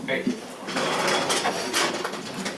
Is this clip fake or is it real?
real